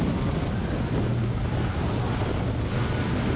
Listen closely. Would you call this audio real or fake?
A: real